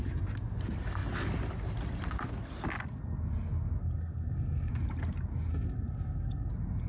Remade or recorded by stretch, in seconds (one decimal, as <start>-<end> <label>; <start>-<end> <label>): 0.0-3.8 recorded; 3.8-4.7 remade; 4.7-5.5 recorded; 5.5-6.5 remade; 6.5-6.9 recorded